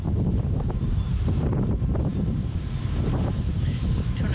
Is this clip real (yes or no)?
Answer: no